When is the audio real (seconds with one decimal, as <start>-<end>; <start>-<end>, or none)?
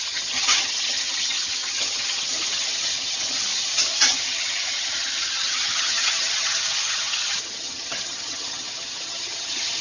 none